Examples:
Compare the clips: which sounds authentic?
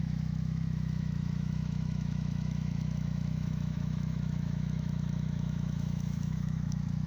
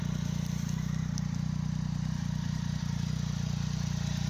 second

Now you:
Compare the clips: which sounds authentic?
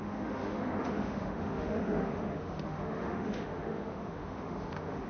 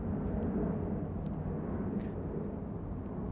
second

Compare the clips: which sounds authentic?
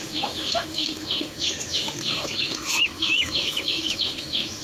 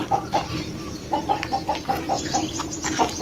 second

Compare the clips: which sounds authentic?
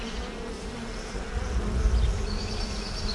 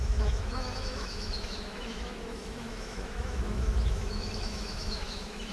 first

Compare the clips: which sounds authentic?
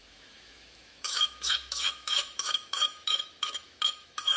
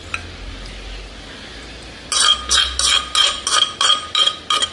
second